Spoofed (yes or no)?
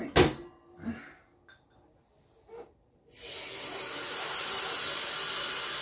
no